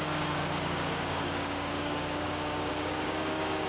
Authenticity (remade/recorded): remade